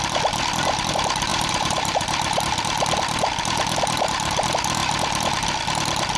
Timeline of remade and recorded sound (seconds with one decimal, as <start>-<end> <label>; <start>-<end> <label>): 0.0-1.3 recorded; 1.3-2.4 remade; 2.4-6.2 recorded